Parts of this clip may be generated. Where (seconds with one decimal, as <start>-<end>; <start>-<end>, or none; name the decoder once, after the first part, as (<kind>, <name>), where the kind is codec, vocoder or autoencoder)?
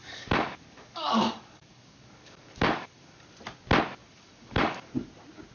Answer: 0.0-3.3 (codec, DAC); 4.0-4.9